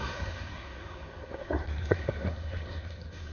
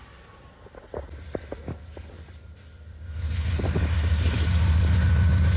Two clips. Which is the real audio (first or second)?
second